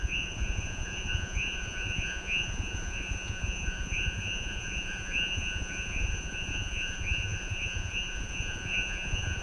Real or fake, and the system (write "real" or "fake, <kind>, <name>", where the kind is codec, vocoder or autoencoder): fake, vocoder, Vocos